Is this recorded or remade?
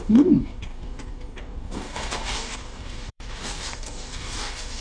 remade